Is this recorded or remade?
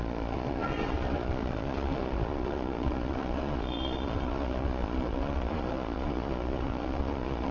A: remade